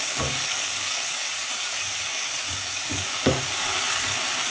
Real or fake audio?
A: fake